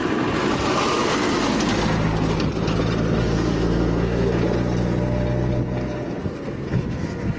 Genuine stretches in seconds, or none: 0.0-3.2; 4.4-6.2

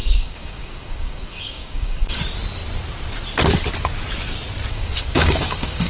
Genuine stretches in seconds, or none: 2.2-4.7

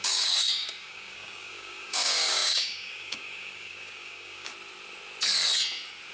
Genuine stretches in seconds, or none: 4.5-6.1